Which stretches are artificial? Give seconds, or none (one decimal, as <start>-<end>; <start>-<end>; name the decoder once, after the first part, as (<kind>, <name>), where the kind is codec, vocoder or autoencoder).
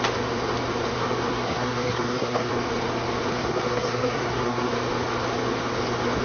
1.3-2.5 (codec, SNAC); 3.3-4.7